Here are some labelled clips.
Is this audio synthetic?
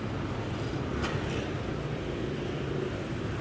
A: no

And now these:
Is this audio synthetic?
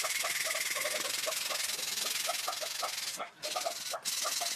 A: no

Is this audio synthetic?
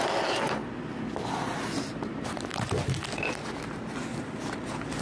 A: no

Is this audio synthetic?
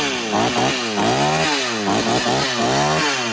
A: no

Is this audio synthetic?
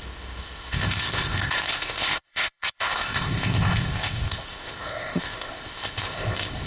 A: yes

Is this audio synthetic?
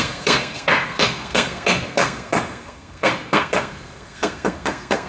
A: yes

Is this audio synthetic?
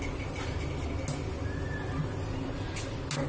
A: no